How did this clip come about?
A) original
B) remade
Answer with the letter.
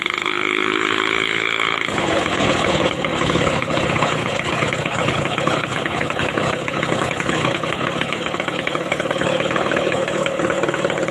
B